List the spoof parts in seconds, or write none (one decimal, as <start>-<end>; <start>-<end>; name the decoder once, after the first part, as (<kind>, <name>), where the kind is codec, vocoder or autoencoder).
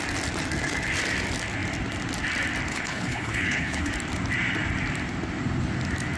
2.7-3.9 (codec, HILCodec)